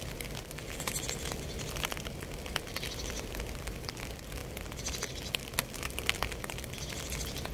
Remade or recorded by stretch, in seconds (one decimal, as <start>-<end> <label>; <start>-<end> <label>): 0.0-7.5 recorded

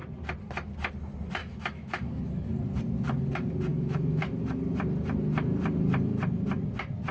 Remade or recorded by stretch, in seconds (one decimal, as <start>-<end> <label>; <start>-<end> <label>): 0.0-1.4 recorded; 1.4-2.5 remade; 2.5-3.7 recorded; 3.7-4.2 remade; 4.2-7.1 recorded

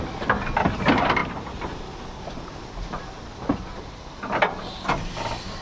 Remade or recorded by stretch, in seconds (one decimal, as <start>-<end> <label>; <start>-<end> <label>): 0.0-5.6 recorded

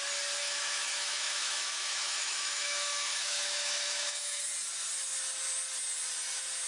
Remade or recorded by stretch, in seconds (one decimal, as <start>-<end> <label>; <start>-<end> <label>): 0.0-0.4 recorded; 0.4-4.4 remade; 4.4-6.7 recorded

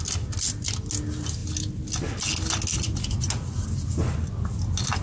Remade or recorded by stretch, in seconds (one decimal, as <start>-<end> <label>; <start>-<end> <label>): 0.0-5.0 recorded

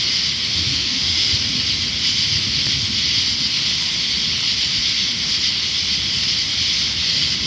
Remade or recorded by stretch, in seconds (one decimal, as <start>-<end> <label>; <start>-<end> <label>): 0.0-0.6 recorded; 0.6-1.3 remade; 1.3-7.5 recorded

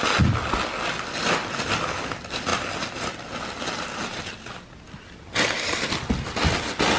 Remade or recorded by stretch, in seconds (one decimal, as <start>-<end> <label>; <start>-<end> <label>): 0.0-7.0 recorded